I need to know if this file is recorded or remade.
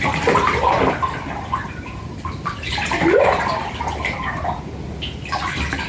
recorded